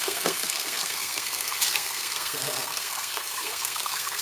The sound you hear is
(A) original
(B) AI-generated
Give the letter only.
B